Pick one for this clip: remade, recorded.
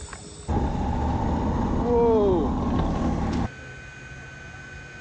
recorded